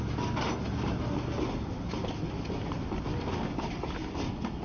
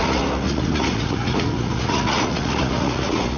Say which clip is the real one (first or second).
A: first